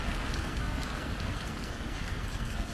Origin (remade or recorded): remade